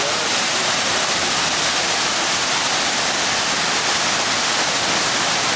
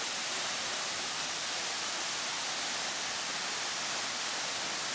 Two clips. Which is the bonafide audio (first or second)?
first